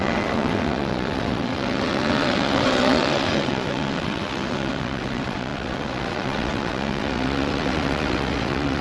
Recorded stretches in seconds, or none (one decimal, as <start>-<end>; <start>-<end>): none